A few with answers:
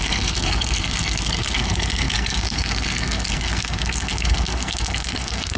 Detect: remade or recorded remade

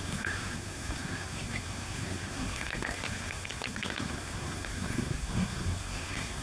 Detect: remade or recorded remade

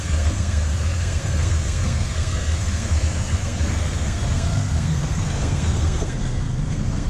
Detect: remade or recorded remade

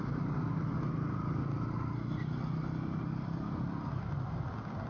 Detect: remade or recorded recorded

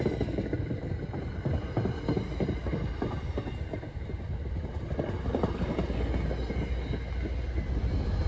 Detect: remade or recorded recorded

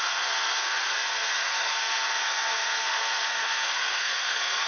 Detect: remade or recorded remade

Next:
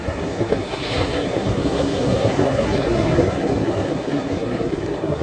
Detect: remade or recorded remade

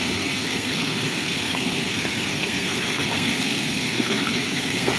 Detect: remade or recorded remade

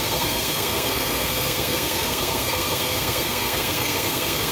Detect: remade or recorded remade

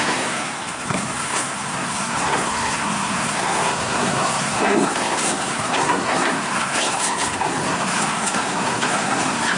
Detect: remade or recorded remade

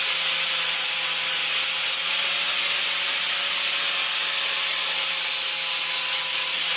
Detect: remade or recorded recorded